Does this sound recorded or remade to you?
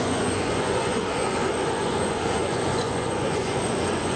remade